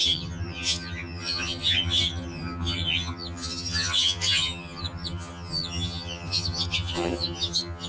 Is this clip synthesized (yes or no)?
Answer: yes